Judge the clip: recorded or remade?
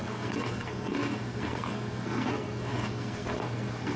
remade